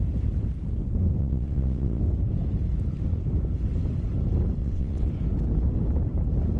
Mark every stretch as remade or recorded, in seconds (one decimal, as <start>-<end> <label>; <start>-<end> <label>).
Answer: 0.0-1.2 recorded; 1.2-2.0 remade; 2.0-4.6 recorded; 4.6-5.1 remade; 5.1-6.6 recorded